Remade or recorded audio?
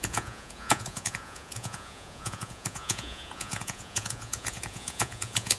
remade